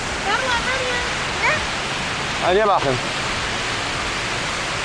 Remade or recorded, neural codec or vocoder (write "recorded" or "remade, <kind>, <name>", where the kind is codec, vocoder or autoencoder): recorded